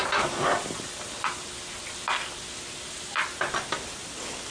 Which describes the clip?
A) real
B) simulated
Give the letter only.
A